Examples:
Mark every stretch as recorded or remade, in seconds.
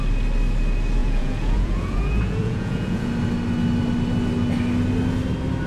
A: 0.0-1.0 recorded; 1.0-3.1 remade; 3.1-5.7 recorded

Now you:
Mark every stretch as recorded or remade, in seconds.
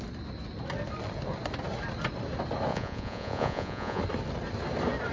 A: 0.0-2.7 recorded; 2.7-4.0 remade; 4.0-5.1 recorded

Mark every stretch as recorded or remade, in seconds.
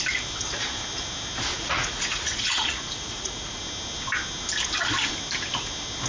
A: 0.0-1.5 recorded; 1.5-3.6 remade; 3.6-6.1 recorded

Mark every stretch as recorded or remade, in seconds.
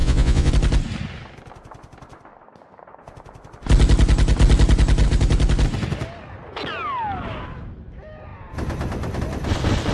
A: 0.0-0.5 remade; 0.5-9.9 recorded